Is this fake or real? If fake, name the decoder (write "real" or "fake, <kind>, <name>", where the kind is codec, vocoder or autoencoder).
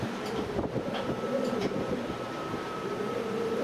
fake, vocoder, BigVGAN v2